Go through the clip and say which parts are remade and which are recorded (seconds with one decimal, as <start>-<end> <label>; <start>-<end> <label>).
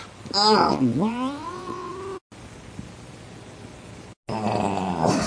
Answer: 0.0-0.7 recorded; 0.7-1.9 remade; 1.9-5.3 recorded